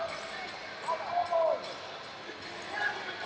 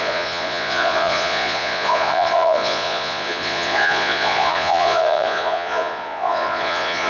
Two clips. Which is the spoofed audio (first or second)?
second